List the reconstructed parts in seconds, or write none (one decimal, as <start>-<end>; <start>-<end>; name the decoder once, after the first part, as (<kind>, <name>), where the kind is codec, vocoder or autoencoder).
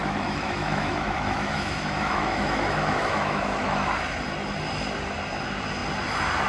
0.0-3.9 (autoencoder, DAC-VAE)